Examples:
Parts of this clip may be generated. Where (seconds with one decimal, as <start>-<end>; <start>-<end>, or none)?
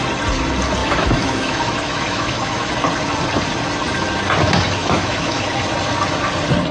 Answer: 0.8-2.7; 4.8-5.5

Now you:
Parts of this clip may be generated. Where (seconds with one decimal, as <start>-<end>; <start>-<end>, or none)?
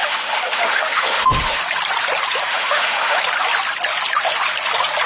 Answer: 0.0-1.6; 2.5-3.2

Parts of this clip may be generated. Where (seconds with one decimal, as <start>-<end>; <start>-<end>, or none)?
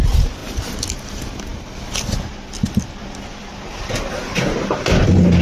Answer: none